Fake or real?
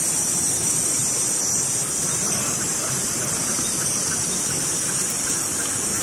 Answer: real